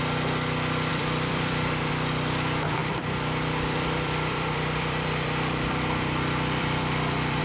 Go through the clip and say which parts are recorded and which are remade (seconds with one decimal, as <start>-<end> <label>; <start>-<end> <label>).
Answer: 0.0-0.9 recorded; 0.9-1.9 remade; 1.9-2.8 recorded; 2.8-7.4 remade